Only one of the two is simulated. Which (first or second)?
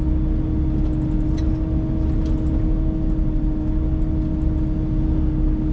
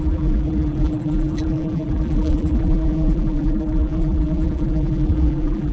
second